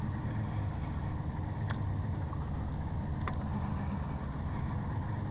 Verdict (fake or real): real